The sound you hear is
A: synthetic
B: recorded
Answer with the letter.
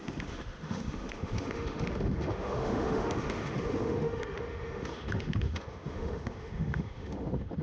A